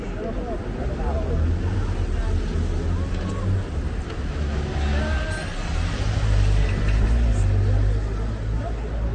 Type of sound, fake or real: real